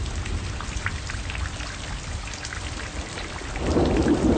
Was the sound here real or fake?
real